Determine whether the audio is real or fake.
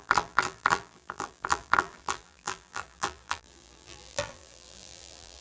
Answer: fake